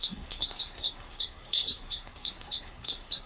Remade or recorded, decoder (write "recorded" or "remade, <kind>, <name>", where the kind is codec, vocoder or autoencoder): remade, codec, SNAC